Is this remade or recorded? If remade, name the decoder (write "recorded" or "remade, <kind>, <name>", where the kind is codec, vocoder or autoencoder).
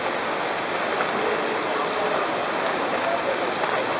recorded